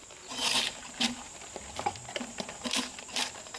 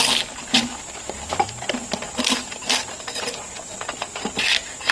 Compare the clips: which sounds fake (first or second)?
first